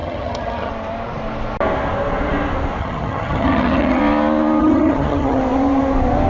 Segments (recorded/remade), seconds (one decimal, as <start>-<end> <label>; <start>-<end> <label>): 0.0-0.7 remade; 0.7-2.8 recorded; 2.8-4.0 remade; 4.0-4.6 recorded; 4.6-5.4 remade; 5.4-6.3 recorded